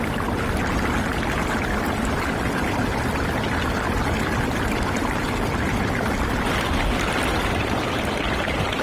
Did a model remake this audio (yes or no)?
no